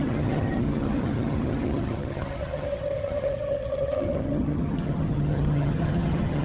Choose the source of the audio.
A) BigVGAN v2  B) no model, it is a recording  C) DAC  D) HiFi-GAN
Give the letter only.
D